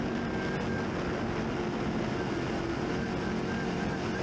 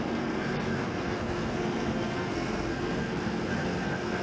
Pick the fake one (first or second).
second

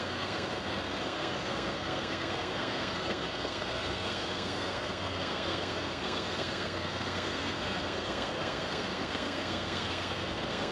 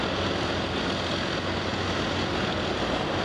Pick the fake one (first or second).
first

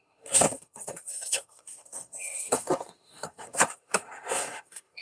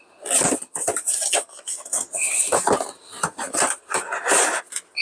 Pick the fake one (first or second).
first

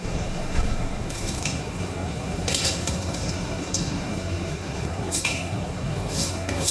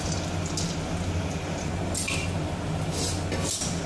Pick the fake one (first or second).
first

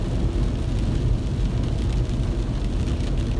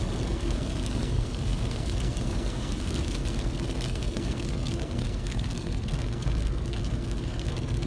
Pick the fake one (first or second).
second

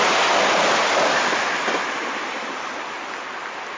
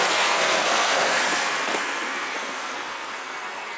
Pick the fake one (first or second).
second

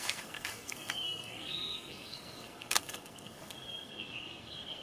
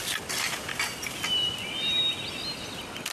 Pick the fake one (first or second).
first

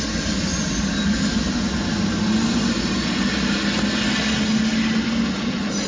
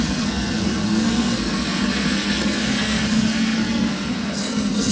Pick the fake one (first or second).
second